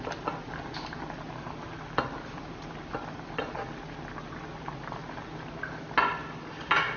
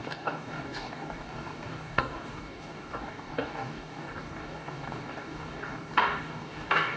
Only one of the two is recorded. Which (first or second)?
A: first